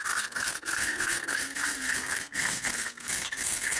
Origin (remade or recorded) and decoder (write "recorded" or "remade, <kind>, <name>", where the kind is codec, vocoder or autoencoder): remade, codec, SNAC